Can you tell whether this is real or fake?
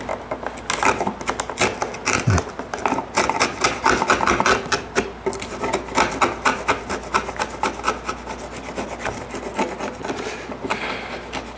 real